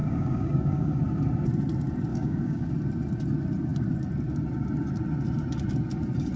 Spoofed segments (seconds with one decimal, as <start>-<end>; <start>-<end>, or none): 0.0-1.0; 2.1-2.7